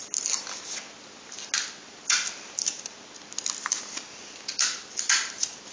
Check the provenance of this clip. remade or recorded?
recorded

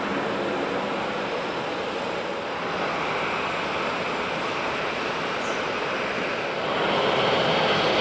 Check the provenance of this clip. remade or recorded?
recorded